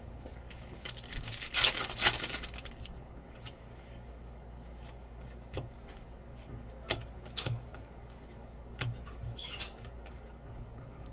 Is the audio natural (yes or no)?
no